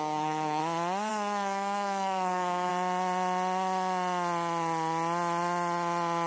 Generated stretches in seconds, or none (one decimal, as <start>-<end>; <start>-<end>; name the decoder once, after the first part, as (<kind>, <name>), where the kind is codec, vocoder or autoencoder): 0.0-0.6 (codec, SNAC); 1.1-2.7